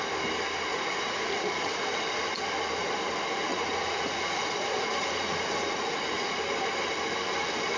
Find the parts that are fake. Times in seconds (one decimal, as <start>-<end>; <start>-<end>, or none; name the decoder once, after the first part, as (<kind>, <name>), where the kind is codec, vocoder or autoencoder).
0.7-2.0 (vocoder, Vocos); 3.5-6.4